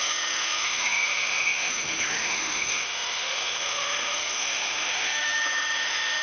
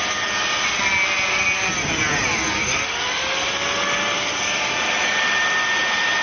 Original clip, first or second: second